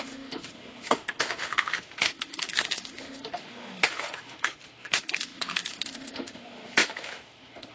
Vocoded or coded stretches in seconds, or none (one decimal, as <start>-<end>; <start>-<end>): 0.0-7.7